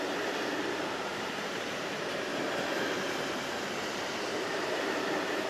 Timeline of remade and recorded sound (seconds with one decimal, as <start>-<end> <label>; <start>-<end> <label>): 0.0-2.3 remade; 2.3-4.8 recorded; 4.8-5.5 remade